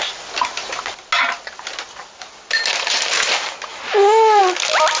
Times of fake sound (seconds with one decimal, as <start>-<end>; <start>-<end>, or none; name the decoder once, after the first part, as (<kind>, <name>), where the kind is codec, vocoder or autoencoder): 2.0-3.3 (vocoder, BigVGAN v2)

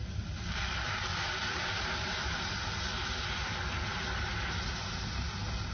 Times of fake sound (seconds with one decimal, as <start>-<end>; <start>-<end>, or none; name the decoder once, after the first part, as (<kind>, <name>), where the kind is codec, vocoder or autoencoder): 1.1-2.5 (vocoder, BigVGAN v2)

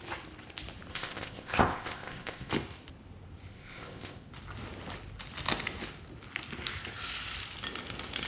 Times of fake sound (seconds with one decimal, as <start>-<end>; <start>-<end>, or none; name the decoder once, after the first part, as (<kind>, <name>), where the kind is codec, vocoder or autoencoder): 0.9-2.5 (codec, ZipCodec); 3.5-4.3